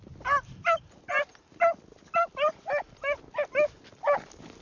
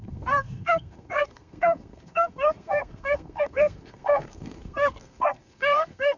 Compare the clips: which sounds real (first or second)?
first